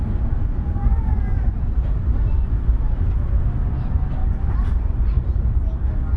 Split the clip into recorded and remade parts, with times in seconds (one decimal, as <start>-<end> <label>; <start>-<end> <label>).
0.0-1.5 recorded; 1.5-2.0 remade; 2.0-4.2 recorded; 4.2-4.8 remade; 4.8-6.2 recorded